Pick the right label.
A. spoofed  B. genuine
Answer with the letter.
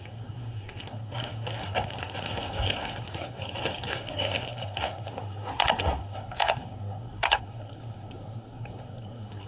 A